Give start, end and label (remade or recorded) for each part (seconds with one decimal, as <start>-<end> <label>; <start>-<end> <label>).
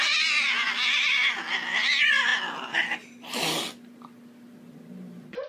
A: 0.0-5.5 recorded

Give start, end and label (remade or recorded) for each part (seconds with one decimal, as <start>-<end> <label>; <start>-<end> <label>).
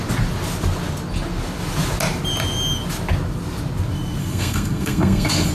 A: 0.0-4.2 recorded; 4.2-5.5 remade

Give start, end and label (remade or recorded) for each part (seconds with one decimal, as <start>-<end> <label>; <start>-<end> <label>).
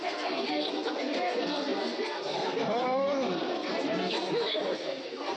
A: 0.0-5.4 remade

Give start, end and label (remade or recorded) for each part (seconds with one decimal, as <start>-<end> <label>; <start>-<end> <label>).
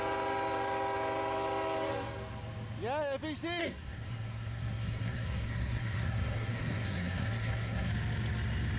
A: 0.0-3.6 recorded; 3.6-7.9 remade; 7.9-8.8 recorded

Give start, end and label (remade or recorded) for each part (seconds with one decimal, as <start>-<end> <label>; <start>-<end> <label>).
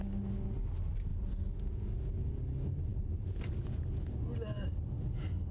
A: 0.0-5.5 recorded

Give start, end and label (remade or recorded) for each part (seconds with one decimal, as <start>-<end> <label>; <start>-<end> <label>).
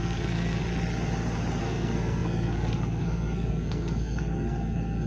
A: 0.0-0.6 remade; 0.6-1.6 recorded; 1.6-5.1 remade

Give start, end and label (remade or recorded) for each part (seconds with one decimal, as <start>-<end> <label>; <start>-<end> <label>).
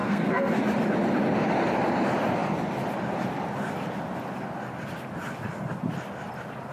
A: 0.0-0.6 remade; 0.6-6.7 recorded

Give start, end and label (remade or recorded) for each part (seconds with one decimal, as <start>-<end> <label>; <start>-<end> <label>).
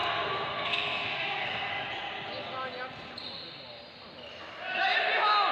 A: 0.0-1.7 remade; 1.7-5.5 recorded